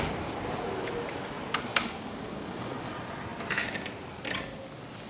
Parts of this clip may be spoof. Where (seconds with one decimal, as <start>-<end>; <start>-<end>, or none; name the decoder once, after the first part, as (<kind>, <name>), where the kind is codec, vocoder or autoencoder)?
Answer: 1.7-2.9 (codec, DAC)